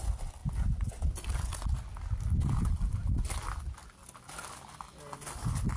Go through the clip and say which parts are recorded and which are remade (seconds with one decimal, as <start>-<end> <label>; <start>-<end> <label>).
0.0-5.8 recorded

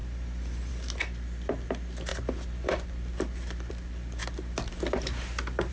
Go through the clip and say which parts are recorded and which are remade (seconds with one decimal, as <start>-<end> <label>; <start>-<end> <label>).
0.0-5.7 recorded